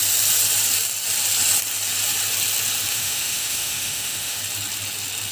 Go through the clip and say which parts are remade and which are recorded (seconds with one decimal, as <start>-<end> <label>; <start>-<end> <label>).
0.0-2.9 recorded; 2.9-4.4 remade; 4.4-5.3 recorded